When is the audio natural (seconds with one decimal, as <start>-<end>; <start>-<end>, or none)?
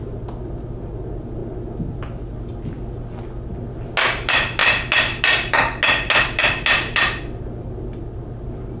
0.0-8.8